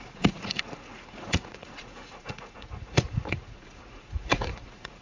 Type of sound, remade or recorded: remade